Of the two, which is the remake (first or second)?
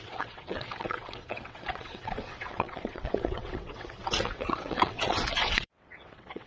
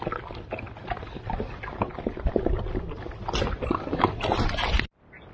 first